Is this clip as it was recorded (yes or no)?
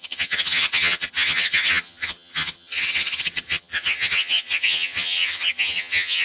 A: no